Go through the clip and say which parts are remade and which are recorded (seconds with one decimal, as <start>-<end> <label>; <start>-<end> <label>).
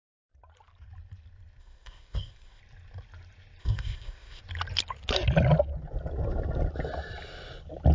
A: 0.0-1.6 recorded; 1.6-2.6 remade; 2.6-3.6 recorded; 3.6-4.4 remade; 4.4-7.9 recorded